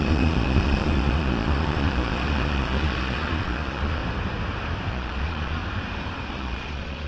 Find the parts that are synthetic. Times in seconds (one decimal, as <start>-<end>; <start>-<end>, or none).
0.0-4.0; 4.9-5.6; 6.3-7.1